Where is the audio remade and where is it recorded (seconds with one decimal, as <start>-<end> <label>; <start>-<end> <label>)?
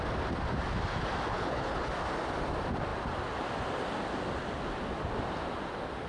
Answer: 0.0-1.3 recorded; 1.3-1.9 remade; 1.9-6.1 recorded